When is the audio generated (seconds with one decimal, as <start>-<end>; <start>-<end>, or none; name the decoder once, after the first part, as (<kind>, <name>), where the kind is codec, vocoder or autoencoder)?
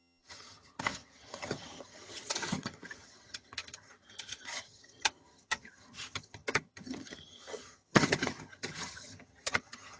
0.0-10.0 (vocoder, HiFi-GAN)